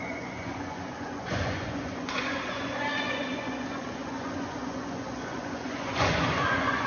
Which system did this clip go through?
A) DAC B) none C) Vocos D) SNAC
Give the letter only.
C